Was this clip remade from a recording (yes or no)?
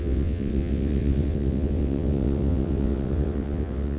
yes